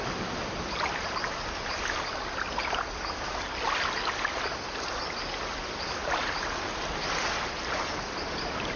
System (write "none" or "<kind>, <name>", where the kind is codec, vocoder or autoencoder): none